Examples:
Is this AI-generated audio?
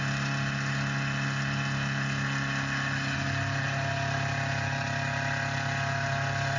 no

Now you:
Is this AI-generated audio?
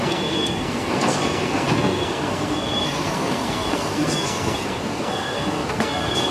yes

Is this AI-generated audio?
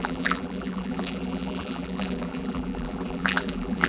yes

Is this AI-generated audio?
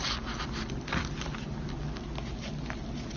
no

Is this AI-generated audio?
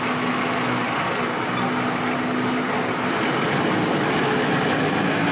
no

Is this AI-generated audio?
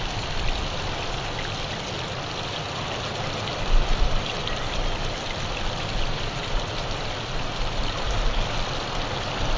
no